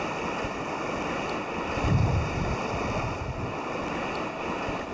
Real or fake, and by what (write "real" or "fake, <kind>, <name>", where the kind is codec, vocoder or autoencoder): real